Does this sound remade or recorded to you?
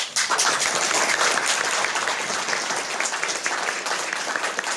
recorded